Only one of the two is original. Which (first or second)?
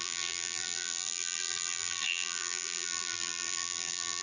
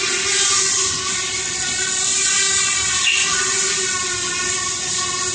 second